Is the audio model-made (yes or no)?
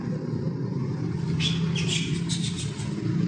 no